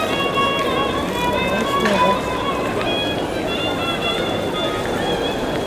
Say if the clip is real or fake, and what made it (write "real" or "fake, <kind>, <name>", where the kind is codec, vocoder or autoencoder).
real